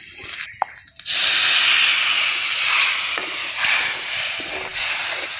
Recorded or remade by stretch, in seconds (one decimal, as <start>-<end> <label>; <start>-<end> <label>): 0.0-5.4 recorded